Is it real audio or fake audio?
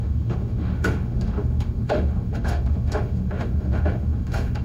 fake